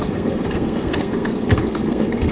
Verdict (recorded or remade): remade